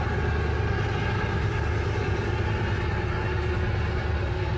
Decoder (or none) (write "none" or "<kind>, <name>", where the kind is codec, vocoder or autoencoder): none